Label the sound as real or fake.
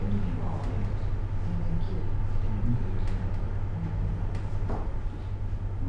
real